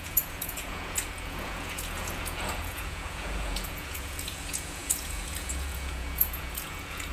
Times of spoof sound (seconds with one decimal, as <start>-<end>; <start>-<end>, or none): 0.0-7.1

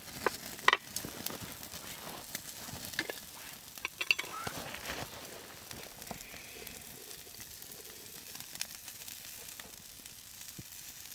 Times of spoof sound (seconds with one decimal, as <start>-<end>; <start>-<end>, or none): none

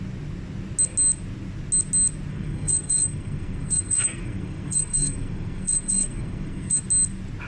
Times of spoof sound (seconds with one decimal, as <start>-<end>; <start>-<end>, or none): 2.3-6.8

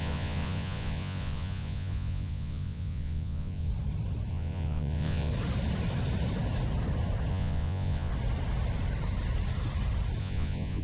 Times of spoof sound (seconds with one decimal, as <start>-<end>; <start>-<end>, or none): 0.0-3.7; 4.3-5.3; 7.3-8.1; 10.2-10.8

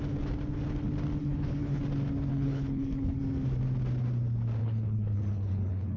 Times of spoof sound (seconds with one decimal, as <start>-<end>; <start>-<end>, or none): 1.2-1.8; 2.3-3.2; 4.6-6.0

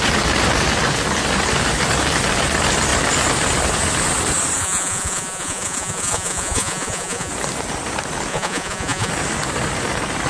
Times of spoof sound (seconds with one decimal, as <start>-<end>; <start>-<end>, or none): 4.6-7.3; 8.3-9.1

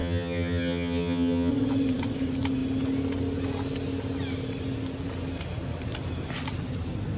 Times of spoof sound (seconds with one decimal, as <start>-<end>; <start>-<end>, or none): 0.0-1.5